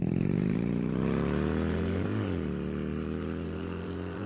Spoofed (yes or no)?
yes